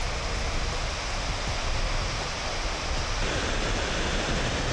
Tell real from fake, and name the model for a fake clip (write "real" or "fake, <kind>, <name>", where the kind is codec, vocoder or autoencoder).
fake, vocoder, BigVGAN v2